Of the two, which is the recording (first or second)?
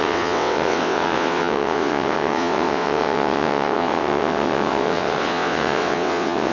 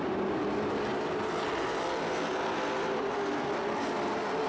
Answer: second